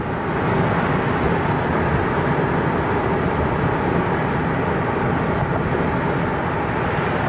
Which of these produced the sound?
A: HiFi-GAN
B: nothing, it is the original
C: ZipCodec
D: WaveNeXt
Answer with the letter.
B